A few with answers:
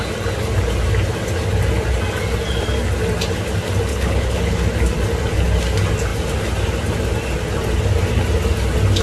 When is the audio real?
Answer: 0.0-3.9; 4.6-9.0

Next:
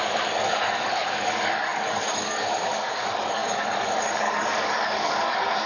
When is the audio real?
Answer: none

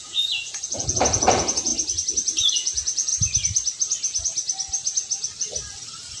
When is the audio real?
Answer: 1.7-2.5; 3.1-6.2

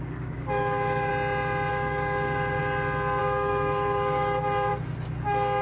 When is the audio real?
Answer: 1.1-1.7; 2.6-3.2; 4.7-5.6

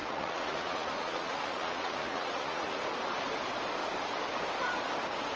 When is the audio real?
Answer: 2.8-5.4

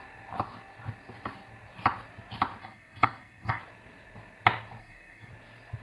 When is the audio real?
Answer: 0.0-2.6; 3.6-4.8; 5.3-5.8

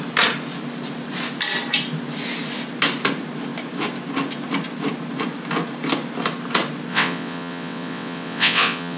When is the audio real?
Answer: 0.0-6.9